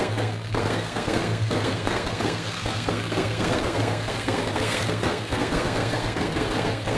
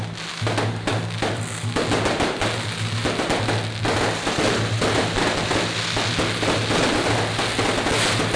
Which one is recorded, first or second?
second